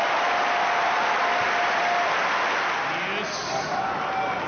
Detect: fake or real real